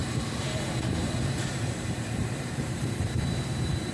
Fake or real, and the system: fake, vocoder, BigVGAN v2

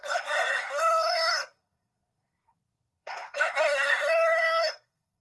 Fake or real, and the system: fake, codec, SNAC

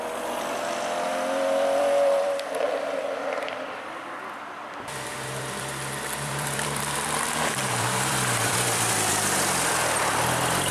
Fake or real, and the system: fake, vocoder, BigVGAN v2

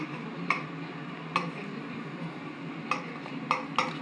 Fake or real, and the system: real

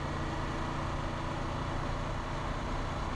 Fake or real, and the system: real